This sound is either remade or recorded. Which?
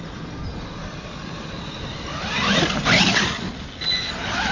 recorded